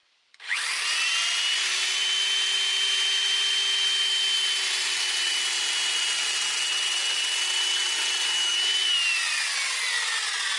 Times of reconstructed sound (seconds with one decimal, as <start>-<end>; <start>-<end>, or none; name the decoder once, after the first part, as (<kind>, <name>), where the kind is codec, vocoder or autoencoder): none

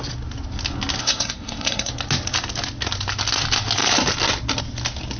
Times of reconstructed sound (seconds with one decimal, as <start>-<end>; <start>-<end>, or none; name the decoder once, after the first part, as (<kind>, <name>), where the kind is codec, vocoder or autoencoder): 1.0-1.9 (codec, SNAC)

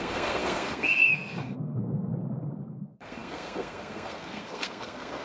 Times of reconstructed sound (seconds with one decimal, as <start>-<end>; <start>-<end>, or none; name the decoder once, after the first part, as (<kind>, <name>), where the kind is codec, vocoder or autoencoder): 0.0-2.1 (codec, SNAC); 2.7-5.2

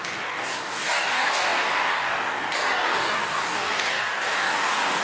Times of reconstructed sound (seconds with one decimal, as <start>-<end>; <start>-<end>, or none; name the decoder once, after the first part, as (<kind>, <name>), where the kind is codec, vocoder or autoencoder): 0.0-5.0 (codec, DAC)

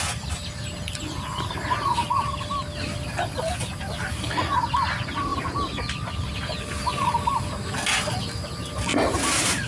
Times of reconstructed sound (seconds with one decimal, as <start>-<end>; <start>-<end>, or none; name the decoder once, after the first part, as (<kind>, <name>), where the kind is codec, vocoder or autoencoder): none

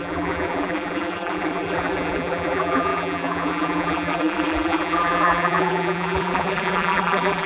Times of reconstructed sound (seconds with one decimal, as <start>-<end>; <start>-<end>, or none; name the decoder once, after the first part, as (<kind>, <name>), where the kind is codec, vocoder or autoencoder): 0.0-7.5 (vocoder, BigVGAN v2)